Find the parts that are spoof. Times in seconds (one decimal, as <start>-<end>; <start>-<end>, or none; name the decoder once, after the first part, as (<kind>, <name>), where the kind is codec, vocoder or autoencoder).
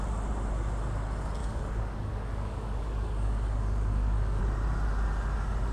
1.4-4.4 (codec, DAC)